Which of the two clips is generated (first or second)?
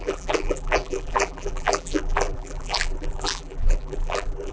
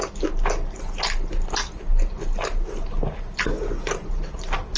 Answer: first